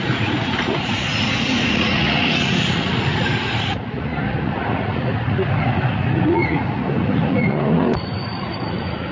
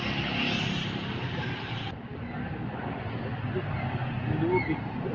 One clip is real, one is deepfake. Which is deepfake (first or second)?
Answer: first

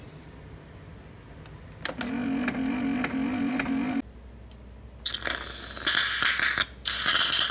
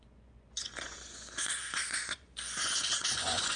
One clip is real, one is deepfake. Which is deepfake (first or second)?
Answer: second